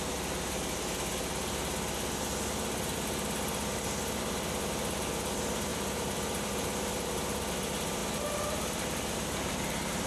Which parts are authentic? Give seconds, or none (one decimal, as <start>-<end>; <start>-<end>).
0.0-5.7; 7.5-10.1